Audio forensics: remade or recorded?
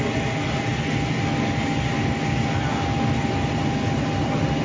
recorded